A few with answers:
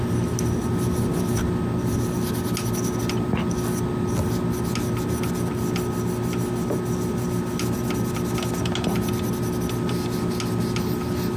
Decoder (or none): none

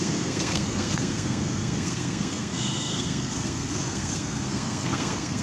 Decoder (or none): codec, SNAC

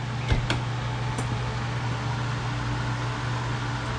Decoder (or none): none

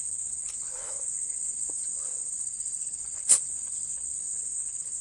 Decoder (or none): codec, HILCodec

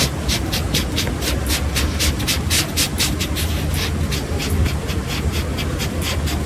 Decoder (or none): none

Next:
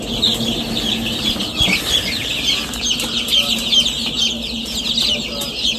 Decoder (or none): none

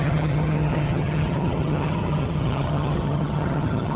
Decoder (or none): vocoder, HiFi-GAN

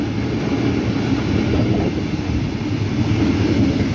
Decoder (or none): none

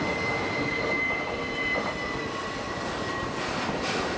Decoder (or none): none